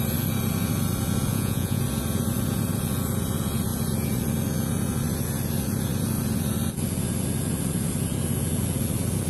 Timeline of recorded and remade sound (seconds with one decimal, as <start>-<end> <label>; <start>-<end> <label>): 0.0-1.3 recorded; 1.3-1.8 remade; 1.8-9.3 recorded